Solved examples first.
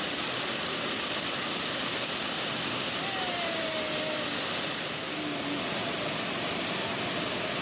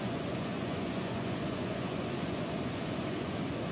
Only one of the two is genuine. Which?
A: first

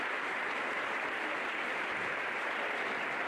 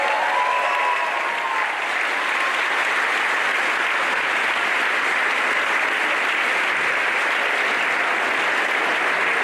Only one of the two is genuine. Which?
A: second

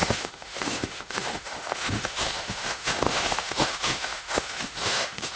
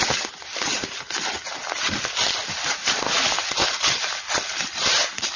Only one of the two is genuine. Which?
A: second